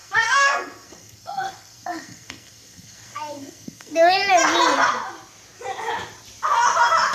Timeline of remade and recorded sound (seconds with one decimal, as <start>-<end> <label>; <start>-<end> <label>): 0.0-4.3 remade; 4.3-7.1 recorded